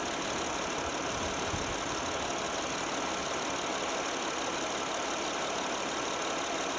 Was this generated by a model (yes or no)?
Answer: no